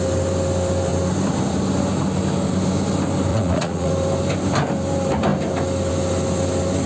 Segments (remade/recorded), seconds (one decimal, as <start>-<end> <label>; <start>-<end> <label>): 0.0-3.3 recorded; 3.3-3.9 remade; 3.9-6.9 recorded